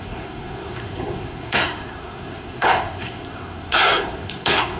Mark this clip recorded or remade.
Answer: remade